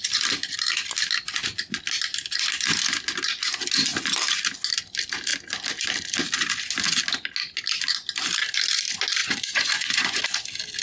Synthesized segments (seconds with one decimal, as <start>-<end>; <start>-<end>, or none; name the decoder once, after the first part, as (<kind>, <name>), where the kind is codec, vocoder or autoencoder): 9.2-10.2 (vocoder, Vocos)